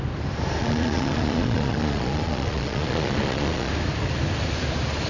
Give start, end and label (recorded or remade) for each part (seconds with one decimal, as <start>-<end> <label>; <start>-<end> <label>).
0.0-0.6 recorded; 0.6-3.7 remade; 3.7-5.1 recorded